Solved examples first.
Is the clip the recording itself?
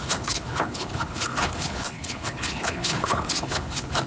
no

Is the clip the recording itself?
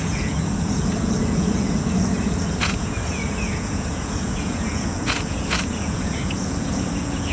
no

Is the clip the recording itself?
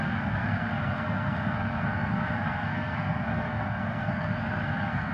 no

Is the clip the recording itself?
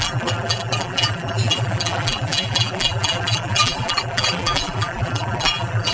no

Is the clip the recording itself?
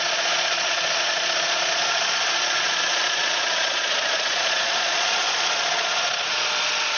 no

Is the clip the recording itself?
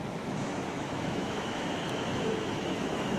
no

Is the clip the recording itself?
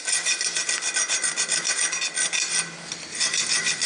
yes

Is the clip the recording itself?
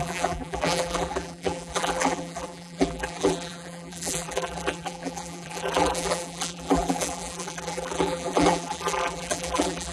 no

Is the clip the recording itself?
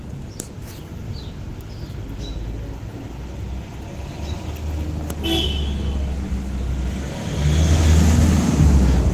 yes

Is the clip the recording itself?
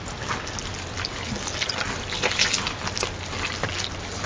yes